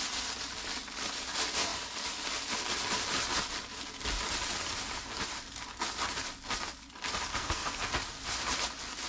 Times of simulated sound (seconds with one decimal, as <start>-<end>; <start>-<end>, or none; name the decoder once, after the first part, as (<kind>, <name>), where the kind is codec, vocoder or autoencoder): 7.3-7.9 (codec, SNAC)